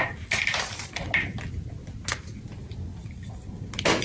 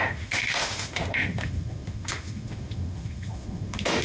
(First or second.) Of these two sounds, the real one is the first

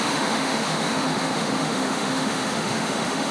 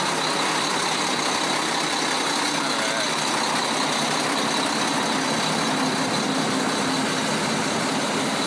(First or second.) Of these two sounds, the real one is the second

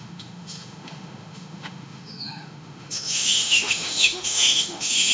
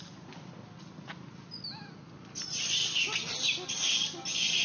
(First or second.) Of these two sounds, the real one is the second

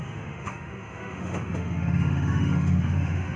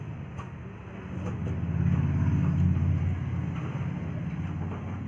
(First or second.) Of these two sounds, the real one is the second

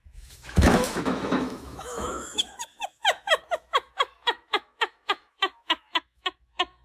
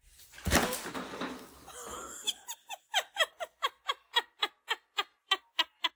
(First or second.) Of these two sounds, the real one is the second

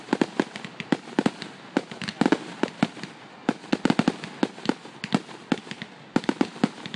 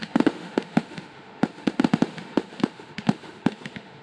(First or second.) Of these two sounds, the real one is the first